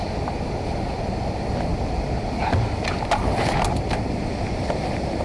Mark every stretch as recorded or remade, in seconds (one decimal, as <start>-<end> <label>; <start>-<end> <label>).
0.0-5.2 recorded